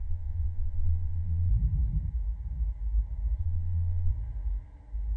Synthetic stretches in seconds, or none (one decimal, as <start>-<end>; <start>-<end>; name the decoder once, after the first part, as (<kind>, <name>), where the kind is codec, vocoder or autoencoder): 0.0-1.5 (vocoder, Vocos); 3.4-4.1